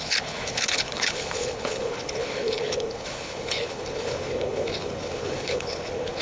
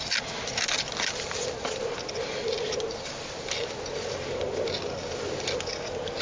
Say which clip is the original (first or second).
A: second